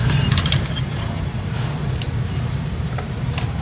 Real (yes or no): no